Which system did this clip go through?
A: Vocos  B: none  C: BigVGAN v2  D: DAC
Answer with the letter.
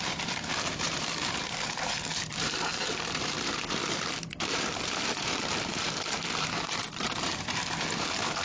C